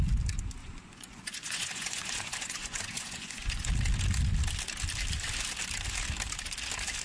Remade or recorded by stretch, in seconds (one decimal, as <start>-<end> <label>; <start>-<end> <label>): 0.0-0.6 recorded; 0.6-3.7 remade; 3.7-7.0 recorded